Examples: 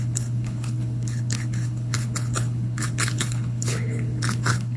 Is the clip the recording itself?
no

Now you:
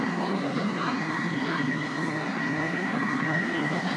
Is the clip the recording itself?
no